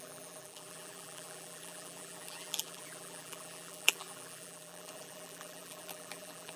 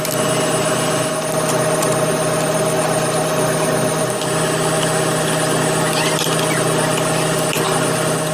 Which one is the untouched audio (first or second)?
second